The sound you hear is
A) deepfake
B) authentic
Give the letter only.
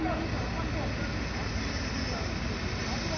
B